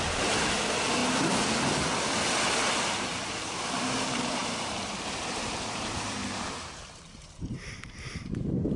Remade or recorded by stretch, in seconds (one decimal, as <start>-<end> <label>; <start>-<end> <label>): 0.0-1.0 remade; 1.0-2.8 recorded; 2.8-8.8 remade